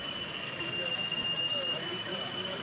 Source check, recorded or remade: remade